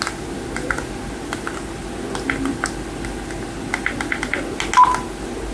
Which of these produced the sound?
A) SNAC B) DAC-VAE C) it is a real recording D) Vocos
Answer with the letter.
C